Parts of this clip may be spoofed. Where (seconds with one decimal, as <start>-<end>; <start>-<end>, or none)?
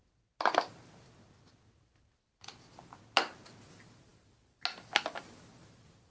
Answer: none